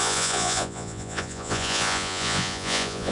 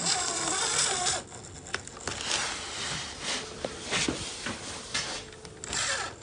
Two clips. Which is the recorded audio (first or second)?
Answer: second